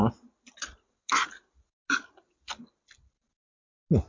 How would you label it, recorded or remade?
recorded